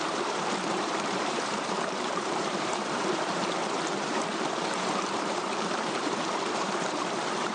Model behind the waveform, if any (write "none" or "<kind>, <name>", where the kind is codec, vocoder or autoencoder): vocoder, BigVGAN v2